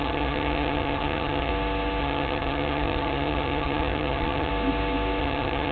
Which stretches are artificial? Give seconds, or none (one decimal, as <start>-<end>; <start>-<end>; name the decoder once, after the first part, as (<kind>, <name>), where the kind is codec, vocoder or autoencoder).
0.0-1.5 (vocoder, HiFi-GAN); 2.0-4.5; 5.2-5.7